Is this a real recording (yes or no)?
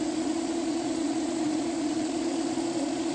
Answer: no